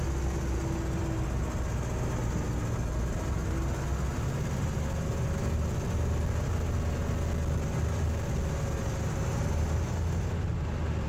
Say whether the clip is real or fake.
real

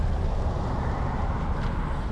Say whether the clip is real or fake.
fake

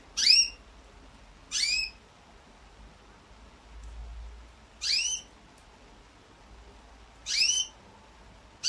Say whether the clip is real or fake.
real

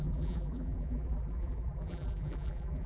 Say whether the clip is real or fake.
fake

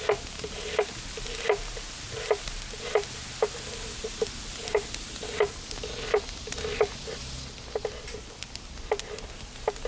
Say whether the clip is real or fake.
real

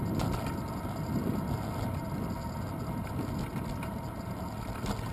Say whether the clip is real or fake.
real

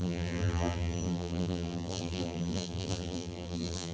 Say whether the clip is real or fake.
fake